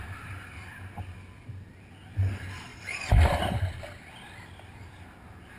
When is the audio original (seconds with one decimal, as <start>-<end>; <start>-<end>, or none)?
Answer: 0.0-2.7; 3.6-5.6